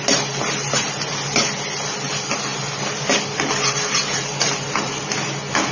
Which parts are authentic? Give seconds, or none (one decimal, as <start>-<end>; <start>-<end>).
0.0-5.7